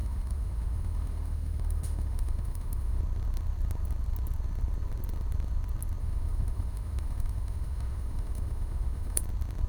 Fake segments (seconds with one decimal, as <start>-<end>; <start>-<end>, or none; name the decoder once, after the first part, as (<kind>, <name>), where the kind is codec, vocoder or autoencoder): 0.0-3.0 (autoencoder, DAC-VAE); 6.0-9.2